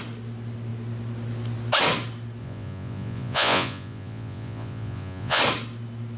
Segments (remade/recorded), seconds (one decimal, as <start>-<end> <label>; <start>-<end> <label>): 0.0-2.4 recorded; 2.4-5.4 remade; 5.4-6.2 recorded